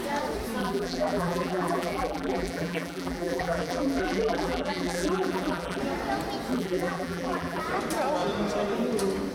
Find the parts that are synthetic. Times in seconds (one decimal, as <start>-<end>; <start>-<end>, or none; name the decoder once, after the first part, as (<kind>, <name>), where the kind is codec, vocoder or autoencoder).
0.6-5.8 (vocoder, BigVGAN v2); 6.5-7.6